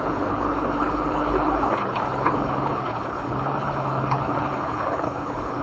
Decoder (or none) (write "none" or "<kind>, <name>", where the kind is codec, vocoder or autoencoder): codec, HILCodec